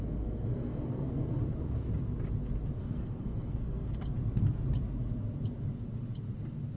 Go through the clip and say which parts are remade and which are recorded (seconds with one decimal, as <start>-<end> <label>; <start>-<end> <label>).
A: 0.0-1.4 remade; 1.4-2.8 recorded; 2.8-4.0 remade; 4.0-6.8 recorded